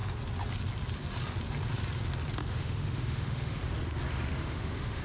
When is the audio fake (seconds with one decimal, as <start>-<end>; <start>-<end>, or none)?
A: 2.4-3.6; 4.1-5.0